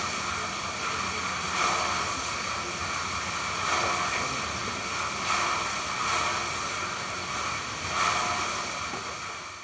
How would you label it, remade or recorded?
recorded